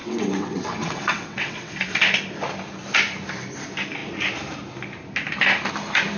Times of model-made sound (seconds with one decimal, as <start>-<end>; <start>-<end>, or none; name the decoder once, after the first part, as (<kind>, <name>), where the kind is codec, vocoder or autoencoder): 0.0-1.7 (vocoder, WaveNeXt)